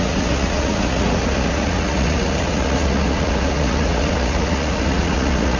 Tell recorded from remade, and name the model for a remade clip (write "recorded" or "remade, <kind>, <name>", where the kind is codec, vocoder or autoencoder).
remade, vocoder, Vocos